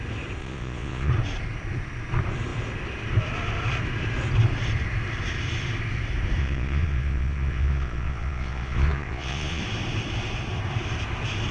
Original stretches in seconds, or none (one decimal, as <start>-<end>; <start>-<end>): 0.0-0.4; 1.1-6.4; 9.6-11.5